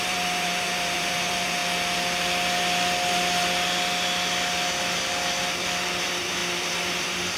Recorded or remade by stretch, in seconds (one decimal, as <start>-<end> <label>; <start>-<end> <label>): 0.0-1.6 remade; 1.6-6.0 recorded; 6.0-7.4 remade